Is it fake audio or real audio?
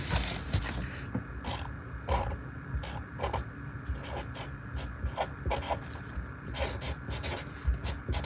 real